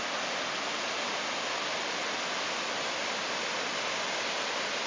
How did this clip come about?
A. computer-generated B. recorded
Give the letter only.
B